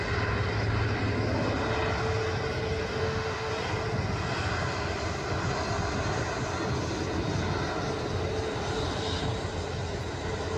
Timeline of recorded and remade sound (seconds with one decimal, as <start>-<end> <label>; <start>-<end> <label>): 0.0-3.0 recorded; 3.0-3.5 remade; 3.5-10.6 recorded